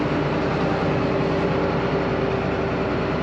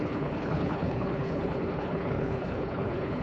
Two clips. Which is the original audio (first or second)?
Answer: first